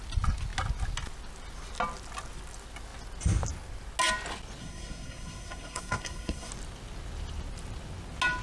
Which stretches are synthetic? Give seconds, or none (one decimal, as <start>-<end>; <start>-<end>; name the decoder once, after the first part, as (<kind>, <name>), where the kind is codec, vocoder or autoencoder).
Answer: 4.6-6.5 (codec, SNAC)